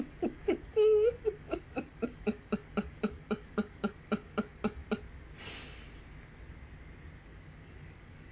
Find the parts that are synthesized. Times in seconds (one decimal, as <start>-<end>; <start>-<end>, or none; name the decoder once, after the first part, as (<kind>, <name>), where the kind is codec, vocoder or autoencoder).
0.0-4.8 (codec, DAC); 7.2-8.3